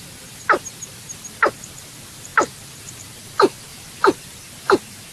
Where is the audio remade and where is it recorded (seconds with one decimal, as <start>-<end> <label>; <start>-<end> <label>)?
0.0-3.7 recorded; 3.7-4.5 remade; 4.5-5.1 recorded